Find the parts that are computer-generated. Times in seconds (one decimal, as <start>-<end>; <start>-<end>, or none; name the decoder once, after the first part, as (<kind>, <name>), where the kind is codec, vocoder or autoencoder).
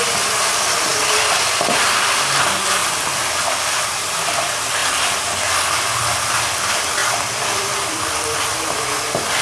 0.9-1.9 (vocoder, BigVGAN v2); 2.8-3.4; 7.0-8.7